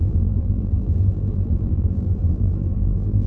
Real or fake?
fake